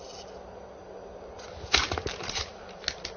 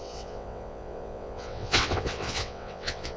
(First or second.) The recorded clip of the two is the first